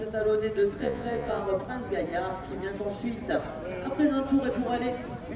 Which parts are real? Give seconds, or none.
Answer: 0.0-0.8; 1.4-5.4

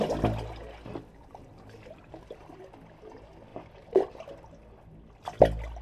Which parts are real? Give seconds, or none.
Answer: 0.0-0.9; 2.6-3.5; 4.6-5.8